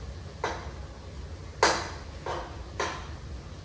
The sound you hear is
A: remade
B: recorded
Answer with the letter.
B